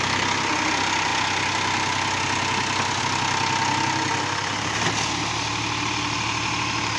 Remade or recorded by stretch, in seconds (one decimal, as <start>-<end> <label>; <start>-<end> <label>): 0.0-7.0 recorded